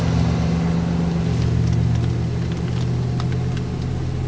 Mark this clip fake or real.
real